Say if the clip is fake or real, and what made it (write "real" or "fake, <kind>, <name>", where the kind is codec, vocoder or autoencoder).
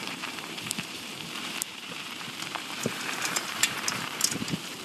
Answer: fake, vocoder, BigVGAN v2